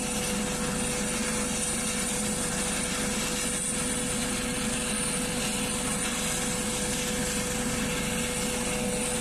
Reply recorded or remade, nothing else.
recorded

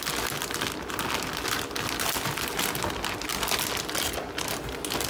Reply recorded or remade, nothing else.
recorded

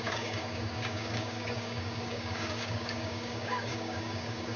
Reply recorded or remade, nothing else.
remade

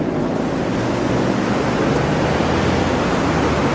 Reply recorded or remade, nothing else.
recorded